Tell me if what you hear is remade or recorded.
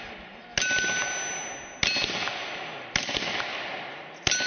recorded